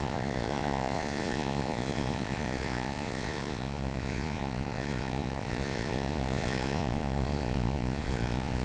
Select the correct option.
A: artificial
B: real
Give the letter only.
A